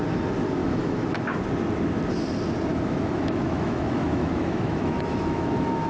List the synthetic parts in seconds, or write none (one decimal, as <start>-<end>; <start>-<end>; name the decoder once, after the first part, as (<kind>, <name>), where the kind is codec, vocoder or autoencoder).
0.6-1.4 (autoencoder, DAC-VAE); 2.7-5.9